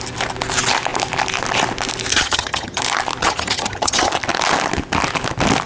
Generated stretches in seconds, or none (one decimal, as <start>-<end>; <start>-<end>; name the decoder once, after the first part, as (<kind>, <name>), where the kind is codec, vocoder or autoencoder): 2.1-2.8 (vocoder, HiFi-GAN); 3.2-4.1